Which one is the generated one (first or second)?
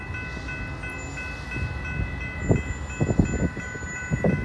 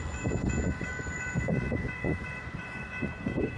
second